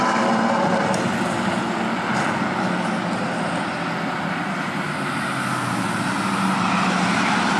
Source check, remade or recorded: recorded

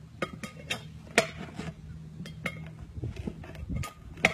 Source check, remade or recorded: recorded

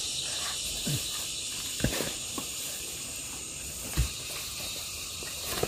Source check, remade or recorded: remade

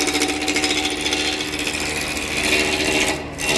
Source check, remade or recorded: recorded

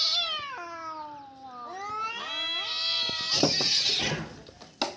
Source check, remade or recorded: recorded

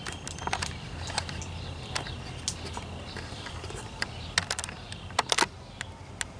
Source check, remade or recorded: recorded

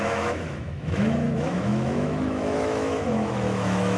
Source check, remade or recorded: remade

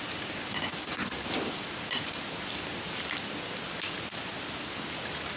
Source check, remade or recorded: recorded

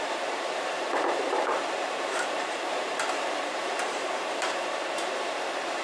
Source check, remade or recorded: remade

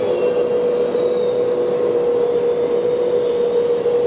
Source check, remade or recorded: recorded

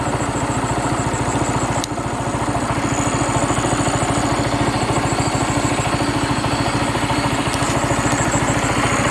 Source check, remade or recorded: recorded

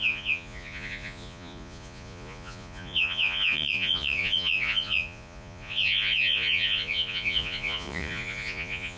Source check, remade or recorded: remade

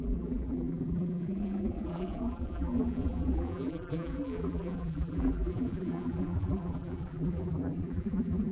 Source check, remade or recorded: remade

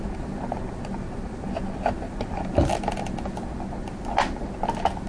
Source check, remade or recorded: remade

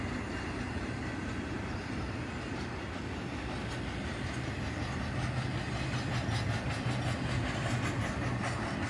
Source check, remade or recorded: recorded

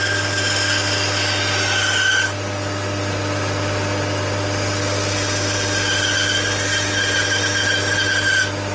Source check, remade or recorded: recorded